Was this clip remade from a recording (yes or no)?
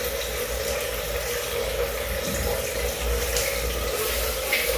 no